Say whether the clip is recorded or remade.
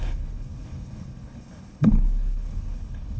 remade